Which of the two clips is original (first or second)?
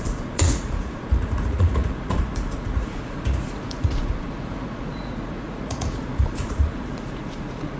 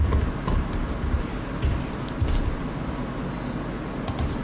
second